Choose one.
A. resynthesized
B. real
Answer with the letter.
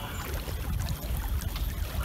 B